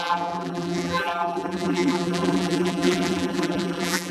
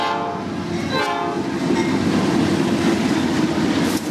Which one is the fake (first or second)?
first